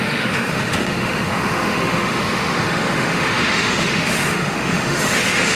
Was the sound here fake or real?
fake